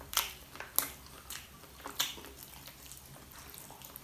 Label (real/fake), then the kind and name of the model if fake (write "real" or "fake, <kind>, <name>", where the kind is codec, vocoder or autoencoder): real